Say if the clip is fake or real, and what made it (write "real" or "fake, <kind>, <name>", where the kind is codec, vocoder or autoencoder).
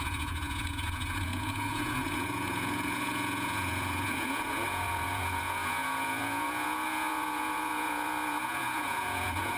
fake, vocoder, Vocos